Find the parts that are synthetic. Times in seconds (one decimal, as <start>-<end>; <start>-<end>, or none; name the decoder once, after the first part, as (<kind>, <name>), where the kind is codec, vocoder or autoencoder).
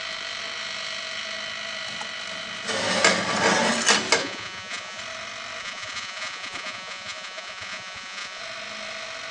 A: 4.2-5.0 (vocoder, Vocos); 5.6-8.4